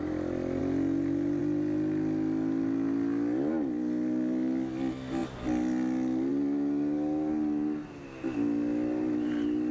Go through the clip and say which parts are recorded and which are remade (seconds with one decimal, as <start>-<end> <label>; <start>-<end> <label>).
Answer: 0.0-9.7 recorded